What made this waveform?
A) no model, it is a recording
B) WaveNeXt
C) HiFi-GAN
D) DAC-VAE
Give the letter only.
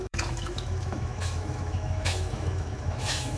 D